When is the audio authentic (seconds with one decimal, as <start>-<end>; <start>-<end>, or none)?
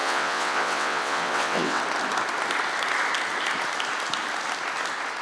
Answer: 1.8-5.2